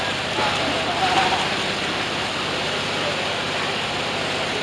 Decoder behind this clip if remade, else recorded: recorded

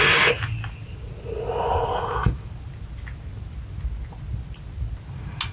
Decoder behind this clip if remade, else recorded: recorded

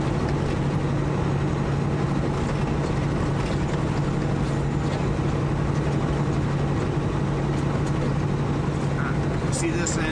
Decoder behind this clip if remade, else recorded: recorded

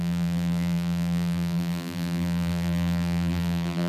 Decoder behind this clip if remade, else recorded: remade, vocoder, BigVGAN v2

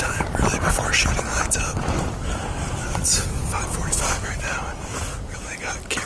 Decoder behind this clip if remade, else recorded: recorded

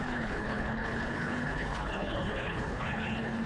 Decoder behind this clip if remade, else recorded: remade, codec, HILCodec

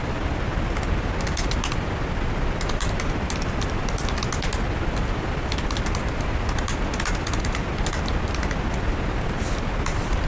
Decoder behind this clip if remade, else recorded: recorded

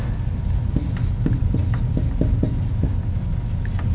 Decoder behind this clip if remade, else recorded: recorded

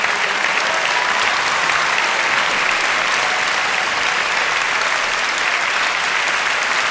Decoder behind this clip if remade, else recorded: recorded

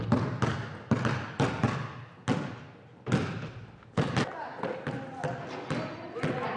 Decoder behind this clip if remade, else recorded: recorded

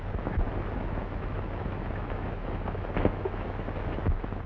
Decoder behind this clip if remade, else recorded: remade, autoencoder, DAC-VAE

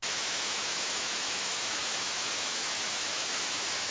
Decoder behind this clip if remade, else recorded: remade, autoencoder, DAC-VAE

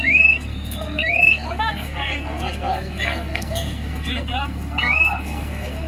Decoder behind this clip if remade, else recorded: remade, codec, SNAC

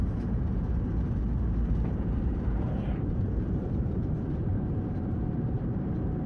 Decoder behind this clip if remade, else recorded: remade, vocoder, BigVGAN v2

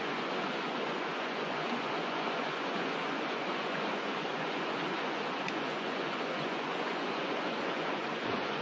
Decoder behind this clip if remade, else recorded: remade, vocoder, Vocos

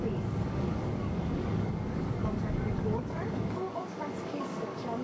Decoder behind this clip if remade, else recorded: remade, codec, DAC